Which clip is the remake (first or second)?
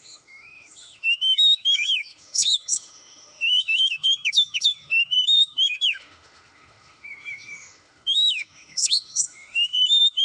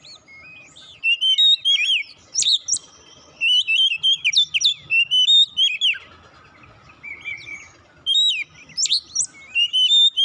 first